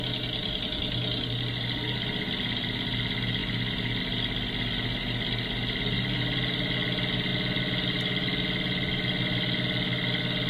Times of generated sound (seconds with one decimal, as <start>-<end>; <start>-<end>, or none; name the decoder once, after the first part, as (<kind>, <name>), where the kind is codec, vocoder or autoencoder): none